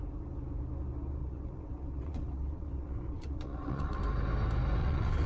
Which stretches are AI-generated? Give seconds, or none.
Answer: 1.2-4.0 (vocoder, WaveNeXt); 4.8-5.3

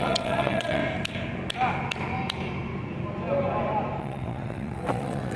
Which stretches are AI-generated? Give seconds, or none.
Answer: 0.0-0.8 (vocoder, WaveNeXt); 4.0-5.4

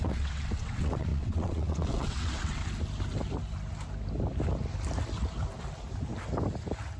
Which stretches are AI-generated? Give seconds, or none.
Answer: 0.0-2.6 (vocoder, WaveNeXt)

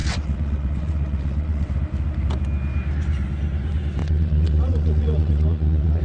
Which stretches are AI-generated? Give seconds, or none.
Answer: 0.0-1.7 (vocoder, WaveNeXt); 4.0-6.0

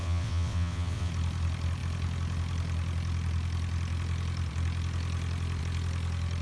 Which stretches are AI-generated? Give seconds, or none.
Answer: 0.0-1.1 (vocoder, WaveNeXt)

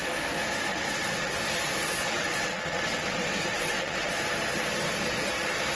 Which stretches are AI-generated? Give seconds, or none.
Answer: 0.7-1.3 (vocoder, WaveNeXt); 1.8-4.1

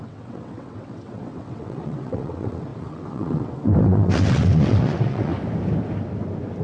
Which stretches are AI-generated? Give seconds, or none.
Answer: 0.0-5.3 (vocoder, WaveNeXt)

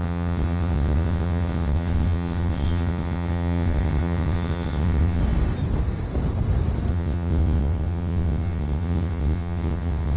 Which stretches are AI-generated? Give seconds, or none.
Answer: 0.0-5.2 (vocoder, WaveNeXt); 6.9-10.2